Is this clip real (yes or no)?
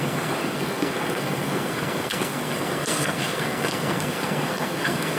no